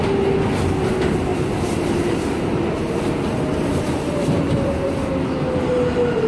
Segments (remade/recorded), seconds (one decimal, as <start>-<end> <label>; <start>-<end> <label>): 0.0-1.3 recorded; 1.3-5.1 remade; 5.1-6.3 recorded